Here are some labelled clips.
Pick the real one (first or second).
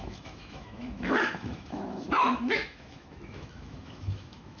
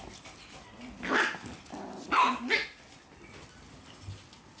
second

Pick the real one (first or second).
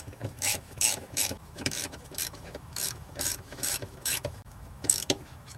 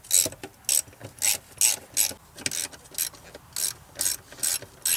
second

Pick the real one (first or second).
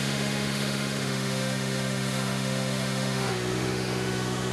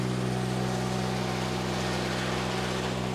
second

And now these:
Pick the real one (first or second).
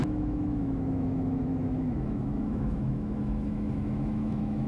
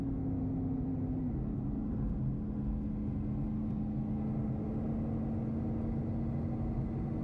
second